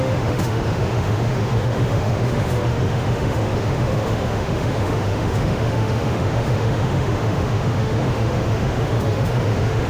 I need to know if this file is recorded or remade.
remade